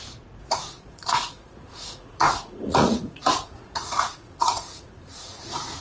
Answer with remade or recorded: remade